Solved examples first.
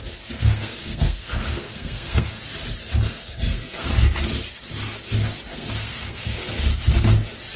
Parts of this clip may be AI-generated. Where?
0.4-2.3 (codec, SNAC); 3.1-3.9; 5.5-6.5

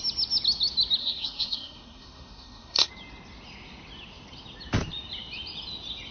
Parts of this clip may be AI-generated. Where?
1.0-2.9 (codec, SNAC)

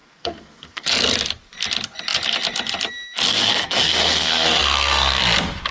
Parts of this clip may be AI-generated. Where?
0.0-1.1 (codec, SNAC); 3.3-5.2

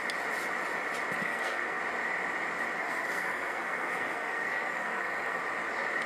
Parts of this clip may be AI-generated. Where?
1.2-1.8 (codec, SNAC); 2.8-5.4

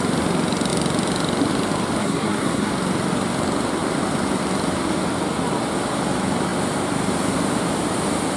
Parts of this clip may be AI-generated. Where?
2.0-2.7 (codec, SNAC)

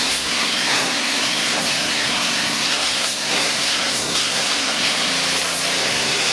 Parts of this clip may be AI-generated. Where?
0.0-5.1 (codec, SNAC); 5.8-6.3